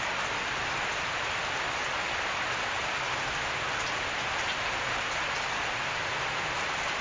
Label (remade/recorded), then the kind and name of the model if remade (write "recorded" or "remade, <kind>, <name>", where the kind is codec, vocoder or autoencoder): recorded